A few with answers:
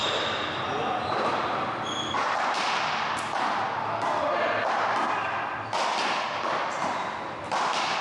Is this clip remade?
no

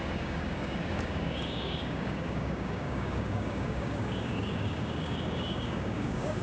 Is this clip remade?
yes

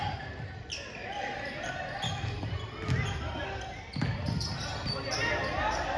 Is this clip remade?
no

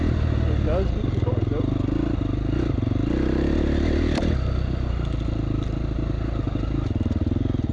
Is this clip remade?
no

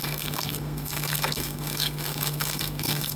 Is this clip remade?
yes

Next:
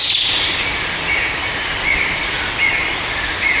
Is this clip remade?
no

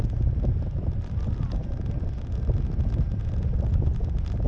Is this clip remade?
no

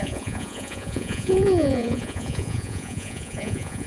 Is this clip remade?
yes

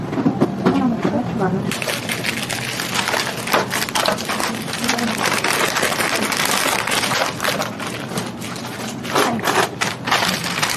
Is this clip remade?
no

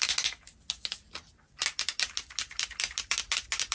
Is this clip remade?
no